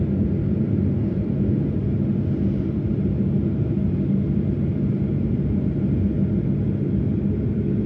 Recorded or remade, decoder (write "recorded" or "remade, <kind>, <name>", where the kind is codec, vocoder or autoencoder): recorded